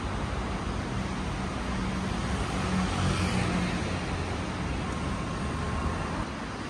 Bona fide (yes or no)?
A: yes